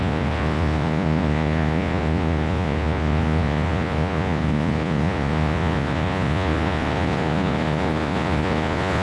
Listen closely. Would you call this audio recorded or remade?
remade